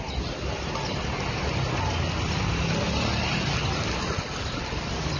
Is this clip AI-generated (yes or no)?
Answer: no